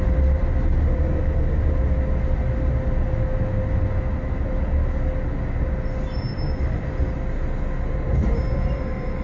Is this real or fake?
real